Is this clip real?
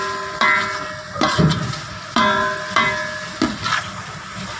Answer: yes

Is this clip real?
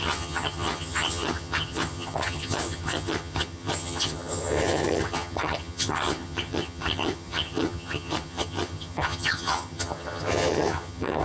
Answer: no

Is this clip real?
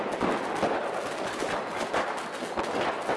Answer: yes